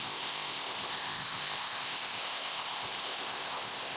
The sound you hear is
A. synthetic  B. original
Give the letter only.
A